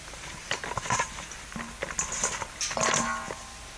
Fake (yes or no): no